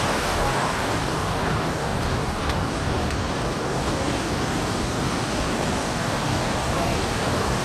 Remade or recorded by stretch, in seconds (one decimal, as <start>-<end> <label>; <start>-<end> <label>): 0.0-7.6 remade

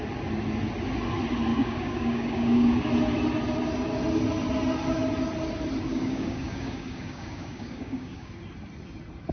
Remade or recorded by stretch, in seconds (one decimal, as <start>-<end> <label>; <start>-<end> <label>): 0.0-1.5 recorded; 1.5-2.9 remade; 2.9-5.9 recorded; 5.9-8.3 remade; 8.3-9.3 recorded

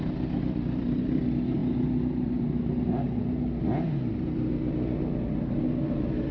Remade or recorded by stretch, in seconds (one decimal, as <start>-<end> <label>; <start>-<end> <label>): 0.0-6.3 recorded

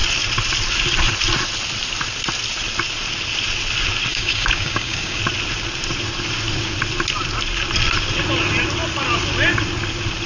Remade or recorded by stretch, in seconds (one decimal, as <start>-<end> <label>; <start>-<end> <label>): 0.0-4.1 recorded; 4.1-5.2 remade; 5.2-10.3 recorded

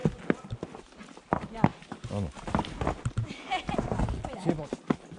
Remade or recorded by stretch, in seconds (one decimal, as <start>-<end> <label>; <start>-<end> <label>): 0.0-5.2 recorded